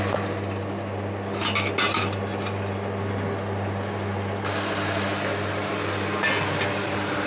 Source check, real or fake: real